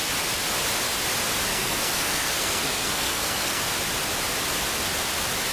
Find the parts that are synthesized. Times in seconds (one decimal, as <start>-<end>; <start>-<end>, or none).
1.5-3.6